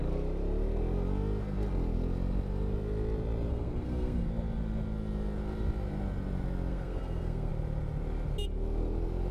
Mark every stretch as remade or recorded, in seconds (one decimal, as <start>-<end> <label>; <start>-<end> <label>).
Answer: 0.0-3.5 recorded; 3.5-4.3 remade; 4.3-6.7 recorded; 6.7-7.5 remade; 7.5-9.3 recorded